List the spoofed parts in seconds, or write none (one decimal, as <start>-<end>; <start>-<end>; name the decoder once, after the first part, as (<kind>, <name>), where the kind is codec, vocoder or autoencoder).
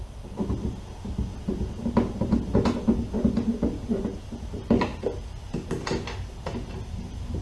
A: none